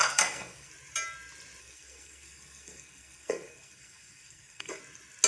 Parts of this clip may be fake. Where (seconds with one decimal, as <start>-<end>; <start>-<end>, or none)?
0.0-0.7; 1.6-4.8